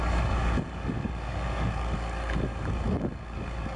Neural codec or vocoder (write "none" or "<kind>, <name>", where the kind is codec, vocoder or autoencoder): codec, DAC